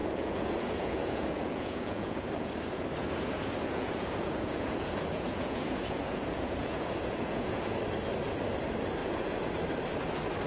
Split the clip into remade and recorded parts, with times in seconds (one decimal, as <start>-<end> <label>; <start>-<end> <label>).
0.0-2.5 remade; 2.5-3.0 recorded; 3.0-7.8 remade; 7.8-9.0 recorded; 9.0-9.5 remade; 9.5-10.5 recorded